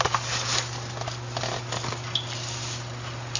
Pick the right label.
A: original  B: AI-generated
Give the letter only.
A